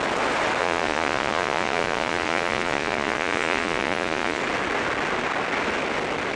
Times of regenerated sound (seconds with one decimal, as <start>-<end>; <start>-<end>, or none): 0.6-4.4